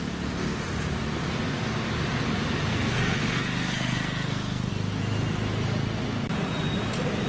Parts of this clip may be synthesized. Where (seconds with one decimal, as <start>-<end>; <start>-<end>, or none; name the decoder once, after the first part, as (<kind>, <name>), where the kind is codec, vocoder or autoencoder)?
2.7-4.7 (codec, SNAC)